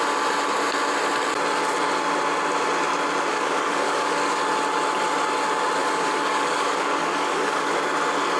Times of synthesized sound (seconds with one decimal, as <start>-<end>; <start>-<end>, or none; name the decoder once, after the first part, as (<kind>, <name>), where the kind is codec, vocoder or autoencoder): 3.3-4.4 (codec, DAC); 5.8-7.7